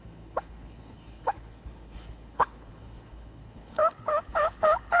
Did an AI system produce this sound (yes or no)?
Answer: yes